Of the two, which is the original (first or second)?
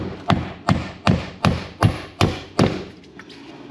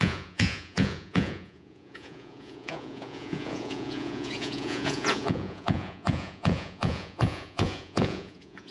first